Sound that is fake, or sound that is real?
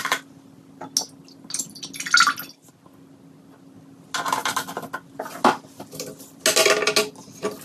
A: real